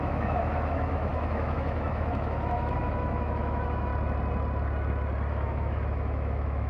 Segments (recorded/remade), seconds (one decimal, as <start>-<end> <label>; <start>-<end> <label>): 0.0-3.9 remade; 3.9-5.3 recorded; 5.3-6.7 remade